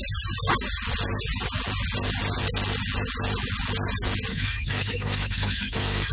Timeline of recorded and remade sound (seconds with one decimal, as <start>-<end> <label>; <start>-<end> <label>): 0.0-4.3 recorded; 4.3-6.1 remade